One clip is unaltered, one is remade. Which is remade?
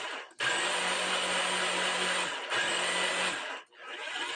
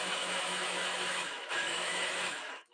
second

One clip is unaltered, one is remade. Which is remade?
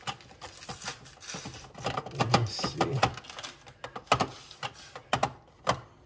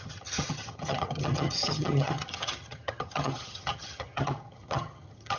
second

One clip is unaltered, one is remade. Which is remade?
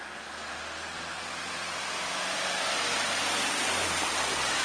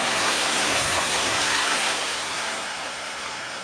second